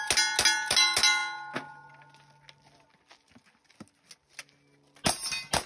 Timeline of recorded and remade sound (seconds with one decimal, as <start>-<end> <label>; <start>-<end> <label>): 0.0-5.7 recorded